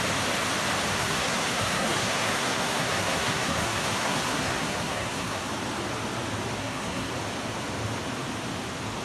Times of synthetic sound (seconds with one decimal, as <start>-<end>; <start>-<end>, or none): 0.9-5.5; 6.6-7.1